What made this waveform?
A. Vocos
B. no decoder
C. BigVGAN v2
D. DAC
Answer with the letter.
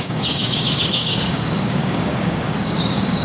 D